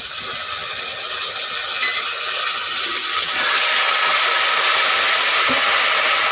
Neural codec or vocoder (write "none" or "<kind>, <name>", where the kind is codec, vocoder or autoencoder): none